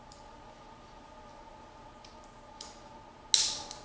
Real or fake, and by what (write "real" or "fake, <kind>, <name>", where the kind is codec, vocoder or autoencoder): real